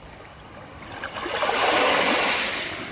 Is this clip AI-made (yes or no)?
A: no